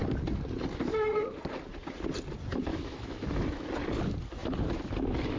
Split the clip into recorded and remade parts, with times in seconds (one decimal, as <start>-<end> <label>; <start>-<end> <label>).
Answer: 0.0-2.7 recorded; 2.7-3.7 remade; 3.7-5.4 recorded